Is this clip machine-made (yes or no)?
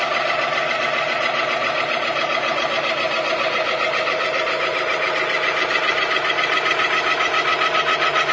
no